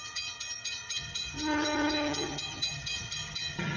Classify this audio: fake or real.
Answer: fake